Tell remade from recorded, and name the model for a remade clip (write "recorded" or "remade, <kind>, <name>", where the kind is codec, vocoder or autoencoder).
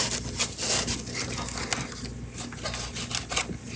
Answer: recorded